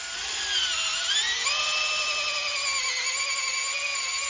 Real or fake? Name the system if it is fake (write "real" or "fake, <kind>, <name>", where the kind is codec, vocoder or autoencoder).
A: real